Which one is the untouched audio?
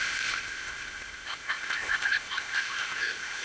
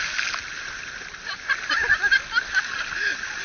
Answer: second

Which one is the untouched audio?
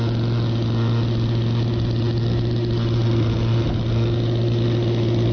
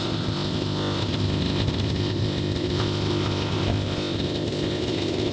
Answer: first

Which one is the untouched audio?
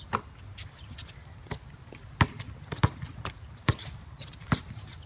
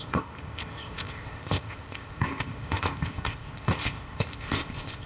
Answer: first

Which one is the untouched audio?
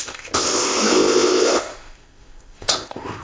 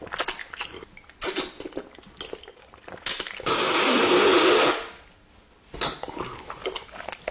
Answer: second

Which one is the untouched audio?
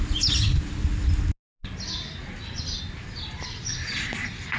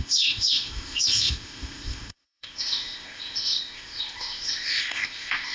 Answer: first